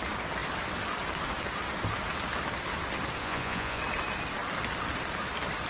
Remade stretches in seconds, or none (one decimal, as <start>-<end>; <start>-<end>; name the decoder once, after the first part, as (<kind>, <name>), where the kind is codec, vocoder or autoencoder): 3.2-3.8 (vocoder, Vocos)